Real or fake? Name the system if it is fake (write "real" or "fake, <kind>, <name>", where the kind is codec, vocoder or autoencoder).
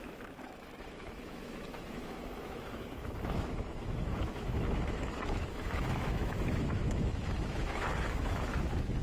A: fake, autoencoder, DAC-VAE